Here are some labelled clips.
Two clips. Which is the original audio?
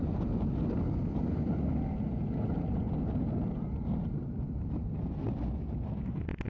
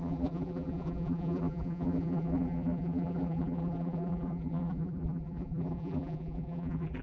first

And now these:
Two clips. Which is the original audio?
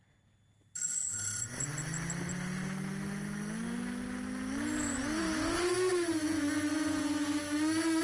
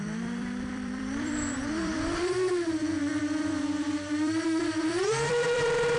first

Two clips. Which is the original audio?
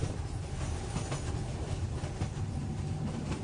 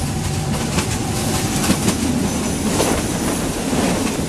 second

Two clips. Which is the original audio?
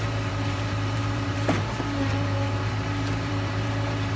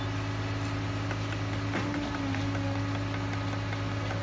second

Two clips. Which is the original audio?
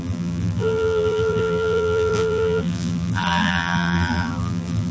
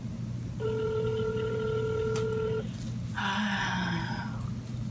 second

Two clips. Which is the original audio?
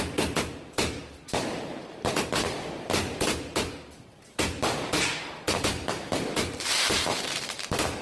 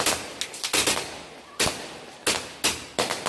second